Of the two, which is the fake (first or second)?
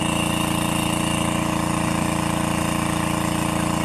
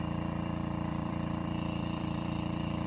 second